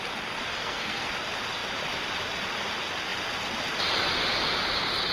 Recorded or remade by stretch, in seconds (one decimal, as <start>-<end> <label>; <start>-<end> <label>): 0.0-0.5 recorded; 0.5-1.1 remade; 1.1-5.1 recorded